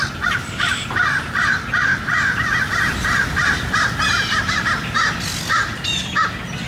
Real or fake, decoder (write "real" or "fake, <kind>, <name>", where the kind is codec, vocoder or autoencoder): real